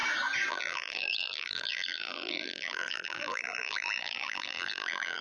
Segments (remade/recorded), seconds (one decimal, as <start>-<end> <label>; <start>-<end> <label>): 0.0-0.5 recorded; 0.5-5.2 remade